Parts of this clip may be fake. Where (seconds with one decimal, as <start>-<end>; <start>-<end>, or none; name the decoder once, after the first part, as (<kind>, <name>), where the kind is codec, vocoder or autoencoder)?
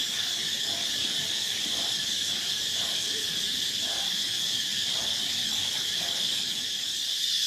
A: 0.0-7.5 (codec, DAC)